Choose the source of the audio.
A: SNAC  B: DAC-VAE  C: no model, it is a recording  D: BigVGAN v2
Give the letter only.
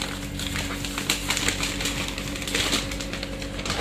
C